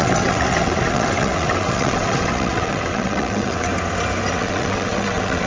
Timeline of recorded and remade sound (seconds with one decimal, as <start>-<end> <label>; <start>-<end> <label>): 0.0-3.7 remade; 3.7-4.3 recorded; 4.3-5.5 remade